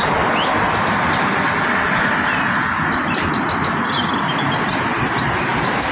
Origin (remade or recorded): recorded